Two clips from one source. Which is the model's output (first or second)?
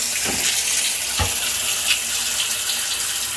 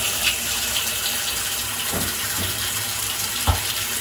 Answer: second